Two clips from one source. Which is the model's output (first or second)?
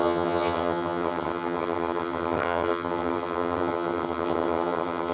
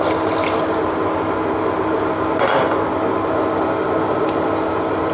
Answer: first